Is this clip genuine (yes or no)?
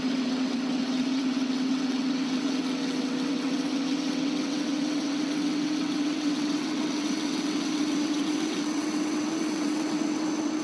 no